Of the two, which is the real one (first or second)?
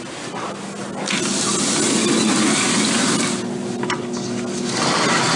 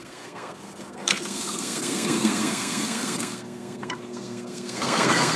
first